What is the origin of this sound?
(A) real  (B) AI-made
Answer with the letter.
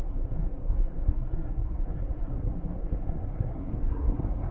B